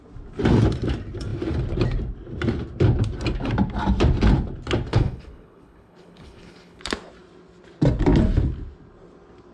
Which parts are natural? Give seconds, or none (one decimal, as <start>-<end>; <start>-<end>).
0.0-4.9; 6.8-9.5